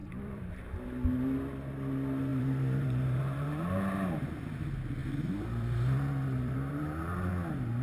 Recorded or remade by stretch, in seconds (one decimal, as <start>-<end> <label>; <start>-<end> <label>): 0.0-0.7 remade; 0.7-2.3 recorded; 2.3-4.3 remade; 4.3-5.0 recorded; 5.0-7.3 remade; 7.3-7.8 recorded